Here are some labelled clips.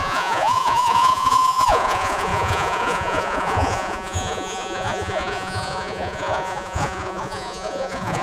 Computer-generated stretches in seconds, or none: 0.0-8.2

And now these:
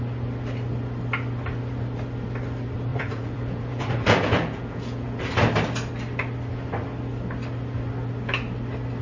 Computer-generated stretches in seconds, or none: 2.9-5.2

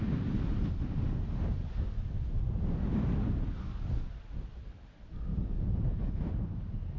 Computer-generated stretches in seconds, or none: 5.3-6.1

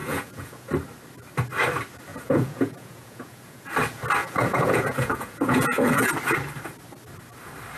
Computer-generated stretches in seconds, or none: 0.0-0.7; 2.1-3.7; 4.2-6.1

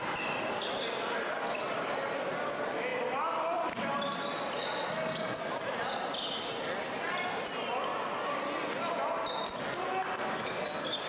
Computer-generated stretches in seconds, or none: none

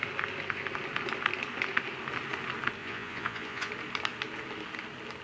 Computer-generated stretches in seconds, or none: 2.8-3.7

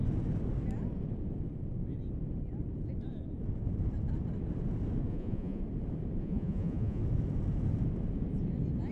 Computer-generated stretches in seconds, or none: 5.1-5.6; 6.2-7.0

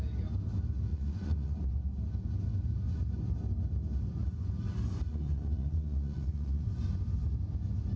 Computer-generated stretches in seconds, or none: 0.9-1.7; 5.1-6.8